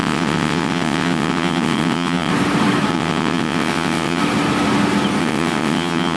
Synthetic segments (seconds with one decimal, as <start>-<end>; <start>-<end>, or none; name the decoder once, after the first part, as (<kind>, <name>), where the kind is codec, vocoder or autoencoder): 0.0-2.3 (vocoder, WaveNeXt); 2.9-4.2; 5.2-6.2